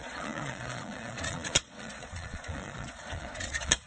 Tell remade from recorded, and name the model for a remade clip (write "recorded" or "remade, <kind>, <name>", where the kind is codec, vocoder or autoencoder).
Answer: remade, vocoder, Vocos